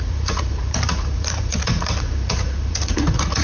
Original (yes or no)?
no